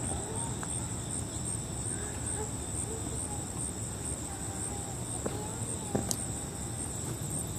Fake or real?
real